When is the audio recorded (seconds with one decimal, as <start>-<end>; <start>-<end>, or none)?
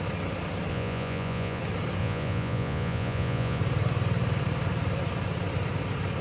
0.0-0.7; 1.6-2.0; 3.6-6.2